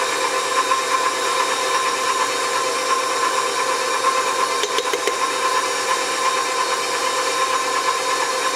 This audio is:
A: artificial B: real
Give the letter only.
B